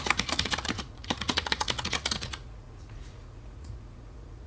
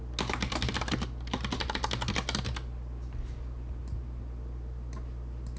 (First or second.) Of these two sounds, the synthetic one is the first